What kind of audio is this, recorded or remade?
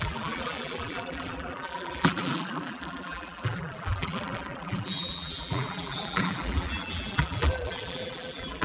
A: remade